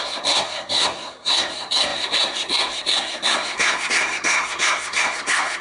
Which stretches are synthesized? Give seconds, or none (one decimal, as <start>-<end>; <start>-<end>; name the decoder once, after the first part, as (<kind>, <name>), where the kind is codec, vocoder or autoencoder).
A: 0.0-5.6 (codec, SNAC)